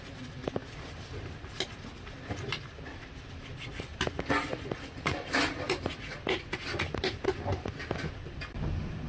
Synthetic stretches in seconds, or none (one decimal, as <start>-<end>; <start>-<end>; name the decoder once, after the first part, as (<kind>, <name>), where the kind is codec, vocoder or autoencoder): 4.5-5.8 (vocoder, BigVGAN v2)